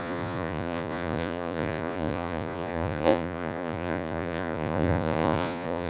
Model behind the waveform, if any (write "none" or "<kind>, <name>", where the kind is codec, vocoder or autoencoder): vocoder, Vocos